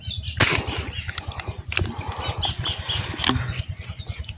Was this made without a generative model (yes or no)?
yes